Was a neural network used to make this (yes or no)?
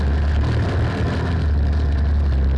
no